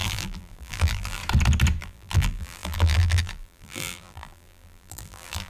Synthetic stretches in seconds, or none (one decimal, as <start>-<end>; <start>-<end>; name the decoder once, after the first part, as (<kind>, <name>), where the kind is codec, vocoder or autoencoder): 0.0-1.2 (vocoder, BigVGAN v2); 1.8-5.5